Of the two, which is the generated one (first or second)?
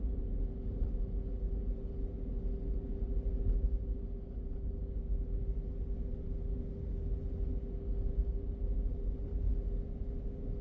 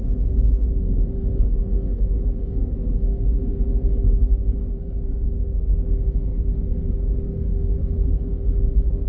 second